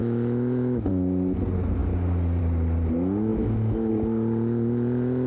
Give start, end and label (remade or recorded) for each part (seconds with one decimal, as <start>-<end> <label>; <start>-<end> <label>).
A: 0.0-0.9 remade; 0.9-3.3 recorded; 3.3-3.9 remade; 3.9-5.3 recorded